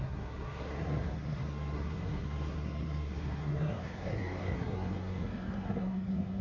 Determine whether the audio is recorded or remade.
remade